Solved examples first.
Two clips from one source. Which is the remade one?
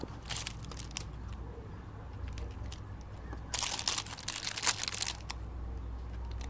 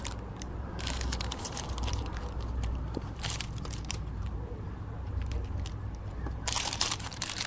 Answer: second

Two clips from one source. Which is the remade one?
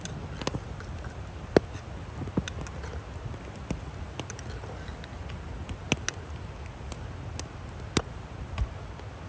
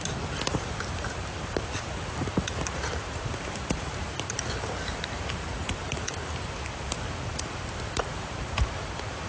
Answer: second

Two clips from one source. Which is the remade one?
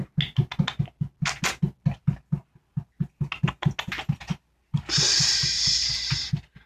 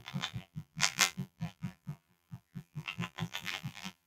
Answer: second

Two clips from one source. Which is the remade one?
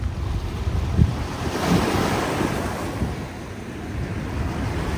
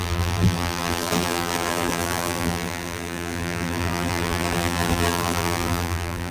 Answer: second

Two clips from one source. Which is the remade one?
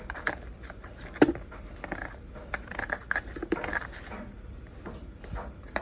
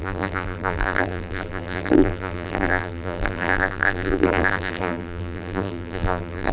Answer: second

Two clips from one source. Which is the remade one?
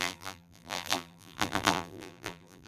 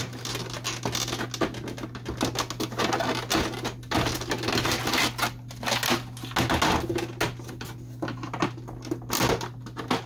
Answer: first